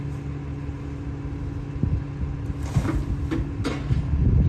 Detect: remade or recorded recorded